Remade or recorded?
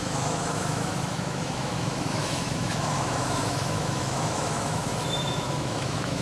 remade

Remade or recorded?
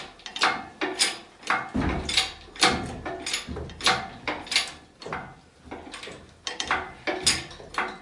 recorded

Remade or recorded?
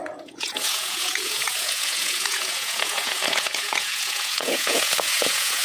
remade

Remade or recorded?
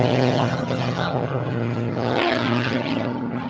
remade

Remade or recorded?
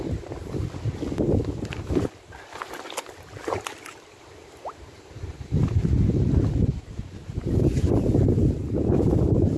recorded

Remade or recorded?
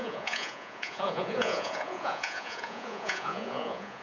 remade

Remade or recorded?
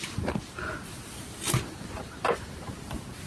recorded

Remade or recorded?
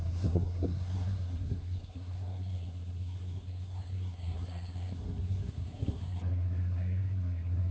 remade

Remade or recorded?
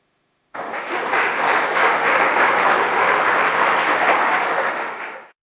remade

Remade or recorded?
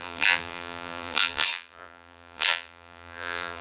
remade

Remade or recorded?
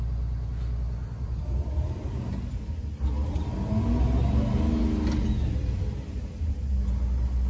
recorded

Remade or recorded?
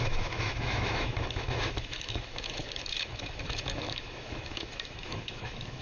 remade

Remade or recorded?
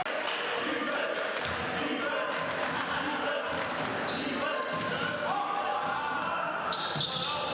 recorded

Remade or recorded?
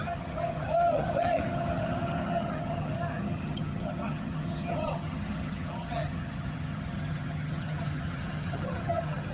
remade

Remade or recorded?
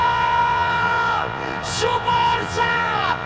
remade